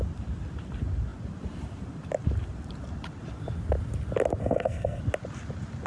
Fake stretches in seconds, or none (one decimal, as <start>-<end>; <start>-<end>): 4.4-5.0